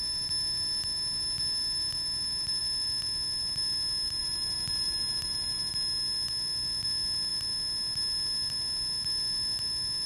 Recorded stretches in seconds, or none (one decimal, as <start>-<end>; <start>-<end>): 0.0-4.2; 5.7-10.1